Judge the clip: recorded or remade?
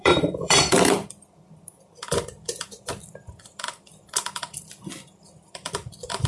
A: remade